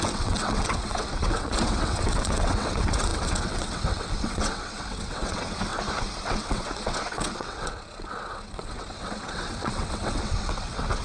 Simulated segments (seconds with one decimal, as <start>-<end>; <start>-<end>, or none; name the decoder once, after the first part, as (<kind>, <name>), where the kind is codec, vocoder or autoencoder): 0.0-5.7 (vocoder, WaveNeXt); 6.3-11.0